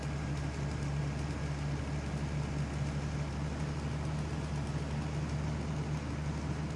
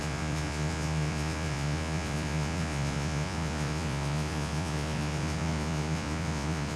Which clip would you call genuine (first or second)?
first